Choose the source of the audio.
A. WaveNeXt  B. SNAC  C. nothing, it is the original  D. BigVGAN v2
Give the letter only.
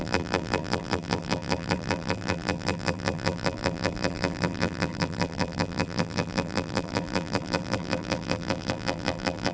D